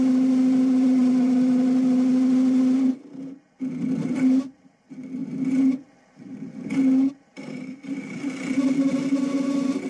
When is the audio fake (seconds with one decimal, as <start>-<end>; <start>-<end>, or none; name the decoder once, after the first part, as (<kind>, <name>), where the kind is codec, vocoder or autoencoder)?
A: 0.0-1.0 (vocoder, BigVGAN v2); 4.0-5.2; 7.1-9.9